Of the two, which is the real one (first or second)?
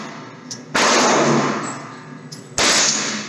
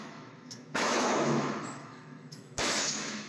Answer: first